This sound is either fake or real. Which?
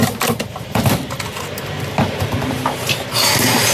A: real